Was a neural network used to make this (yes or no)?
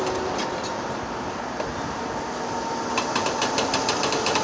no